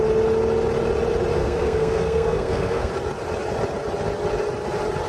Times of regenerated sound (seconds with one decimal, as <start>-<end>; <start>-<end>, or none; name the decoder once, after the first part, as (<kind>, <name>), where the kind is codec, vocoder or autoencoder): 1.4-2.9 (codec, SNAC)

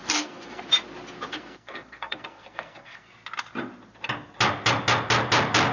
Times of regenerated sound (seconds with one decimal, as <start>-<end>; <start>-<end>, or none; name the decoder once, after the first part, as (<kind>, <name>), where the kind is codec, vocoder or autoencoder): 0.0-0.6 (codec, SNAC); 1.3-3.1